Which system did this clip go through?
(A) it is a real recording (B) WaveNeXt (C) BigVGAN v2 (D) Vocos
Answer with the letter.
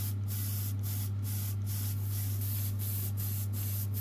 A